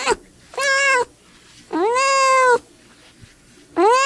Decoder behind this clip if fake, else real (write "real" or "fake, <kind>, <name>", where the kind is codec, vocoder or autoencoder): real